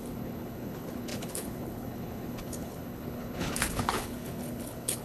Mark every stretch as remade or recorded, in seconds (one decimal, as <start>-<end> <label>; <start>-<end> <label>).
0.0-5.0 remade